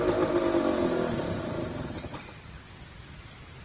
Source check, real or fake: real